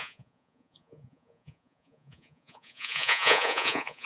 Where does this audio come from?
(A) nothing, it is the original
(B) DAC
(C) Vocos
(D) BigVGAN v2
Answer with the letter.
C